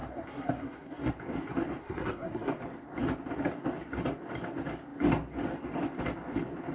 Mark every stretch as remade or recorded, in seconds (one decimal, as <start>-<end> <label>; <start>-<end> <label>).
0.0-1.1 remade; 1.1-1.8 recorded; 1.8-2.5 remade; 2.5-6.7 recorded